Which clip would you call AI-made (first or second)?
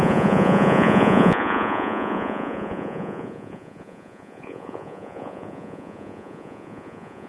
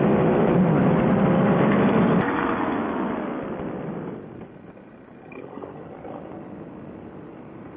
first